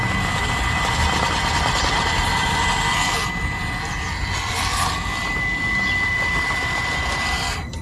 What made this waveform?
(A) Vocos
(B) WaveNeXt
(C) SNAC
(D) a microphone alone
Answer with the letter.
D